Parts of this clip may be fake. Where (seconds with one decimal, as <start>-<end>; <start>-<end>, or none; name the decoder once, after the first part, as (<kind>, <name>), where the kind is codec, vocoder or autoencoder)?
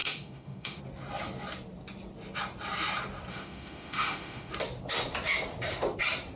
0.0-0.8 (autoencoder, DAC-VAE); 3.3-4.5